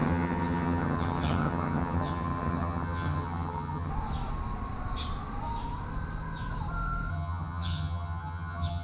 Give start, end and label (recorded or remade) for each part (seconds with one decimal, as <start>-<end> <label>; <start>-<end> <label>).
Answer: 0.0-3.9 remade; 3.9-7.1 recorded; 7.1-8.8 remade